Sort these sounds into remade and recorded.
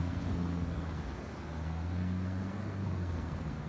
remade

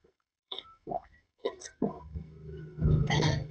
remade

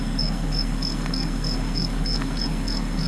remade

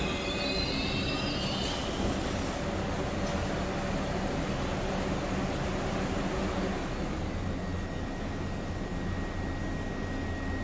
recorded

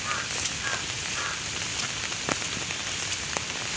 recorded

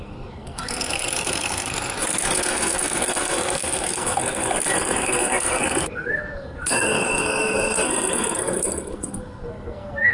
remade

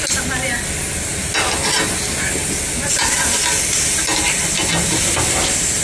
recorded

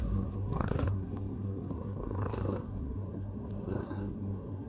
remade